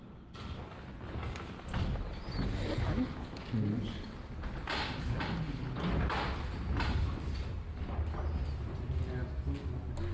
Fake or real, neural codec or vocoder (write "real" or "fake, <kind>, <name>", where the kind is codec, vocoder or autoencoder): real